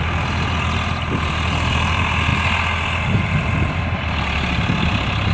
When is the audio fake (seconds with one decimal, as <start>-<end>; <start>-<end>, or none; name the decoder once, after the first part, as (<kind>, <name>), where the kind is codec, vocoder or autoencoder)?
none